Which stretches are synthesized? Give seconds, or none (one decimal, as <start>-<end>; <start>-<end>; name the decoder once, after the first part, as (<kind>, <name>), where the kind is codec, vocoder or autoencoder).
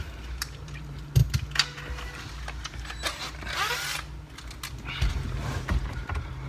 0.0-1.2 (vocoder, BigVGAN v2); 5.1-6.5